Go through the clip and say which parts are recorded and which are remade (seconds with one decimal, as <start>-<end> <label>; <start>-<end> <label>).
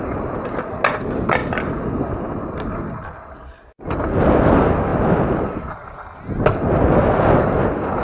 0.0-8.0 recorded